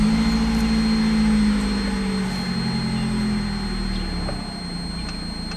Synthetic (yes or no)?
no